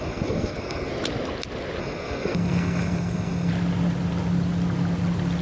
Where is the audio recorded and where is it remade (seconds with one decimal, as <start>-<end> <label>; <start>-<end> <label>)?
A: 0.0-0.9 remade; 0.9-1.8 recorded; 1.8-3.5 remade; 3.5-5.4 recorded